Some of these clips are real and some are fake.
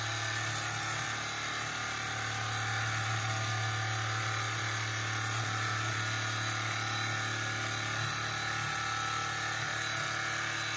real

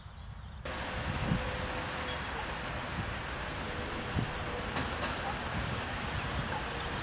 real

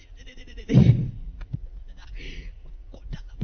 fake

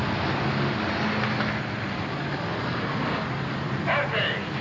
real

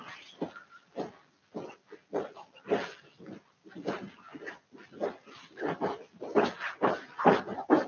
real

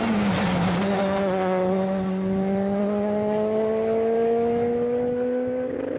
real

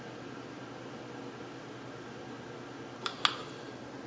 real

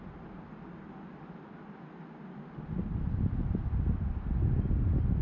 real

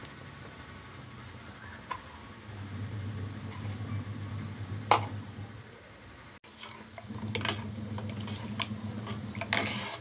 real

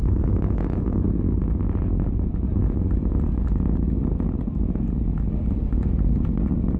real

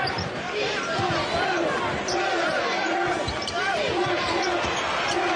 real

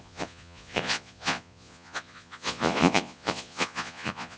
fake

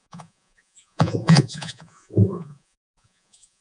fake